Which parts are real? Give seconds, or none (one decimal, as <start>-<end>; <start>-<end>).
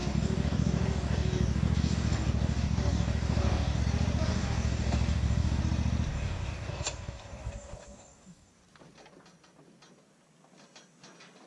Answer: 3.8-4.3; 5.6-6.1; 8.5-11.5